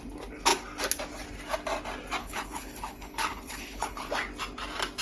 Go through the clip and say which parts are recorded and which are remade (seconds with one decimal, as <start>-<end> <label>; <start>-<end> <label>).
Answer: 0.0-2.2 recorded; 2.2-4.1 remade; 4.1-5.0 recorded